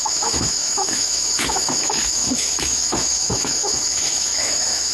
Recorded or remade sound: remade